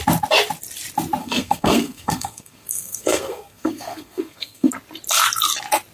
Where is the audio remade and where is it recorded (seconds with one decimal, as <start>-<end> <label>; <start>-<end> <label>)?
0.0-1.2 recorded; 1.2-4.7 remade; 4.7-5.9 recorded